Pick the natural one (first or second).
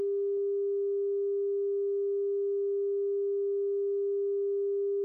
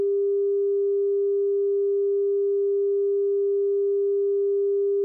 first